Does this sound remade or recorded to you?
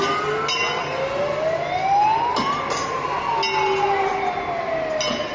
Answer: recorded